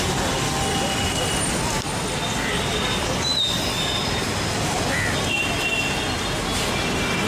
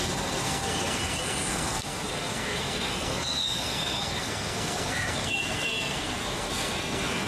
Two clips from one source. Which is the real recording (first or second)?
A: first